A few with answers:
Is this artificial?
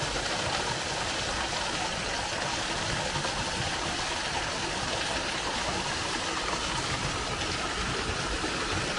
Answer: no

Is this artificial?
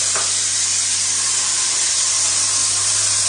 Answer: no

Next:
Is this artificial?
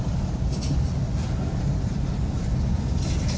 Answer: no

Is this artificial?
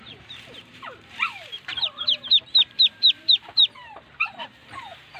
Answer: yes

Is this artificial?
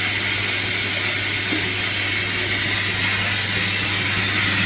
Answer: no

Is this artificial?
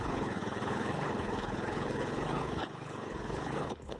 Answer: yes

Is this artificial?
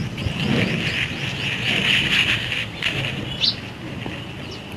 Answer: no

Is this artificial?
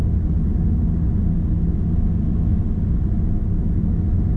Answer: no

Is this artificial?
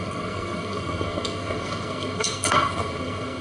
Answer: yes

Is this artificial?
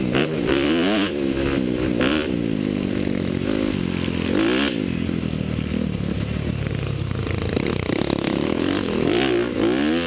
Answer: no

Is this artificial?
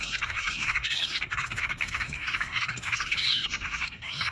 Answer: yes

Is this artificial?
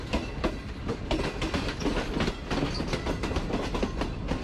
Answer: no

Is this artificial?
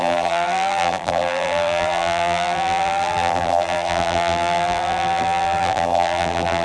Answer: yes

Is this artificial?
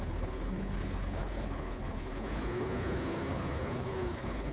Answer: yes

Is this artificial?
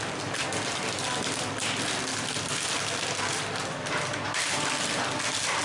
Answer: no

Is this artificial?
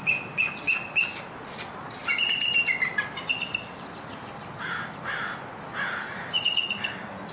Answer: no